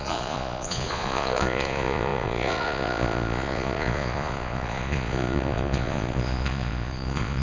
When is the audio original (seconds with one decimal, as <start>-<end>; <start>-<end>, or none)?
none